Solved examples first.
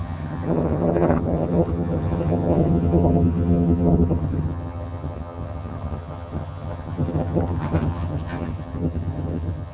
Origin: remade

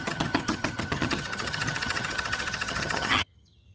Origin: remade